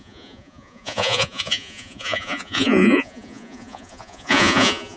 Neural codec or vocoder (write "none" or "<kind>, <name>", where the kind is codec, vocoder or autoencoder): vocoder, Vocos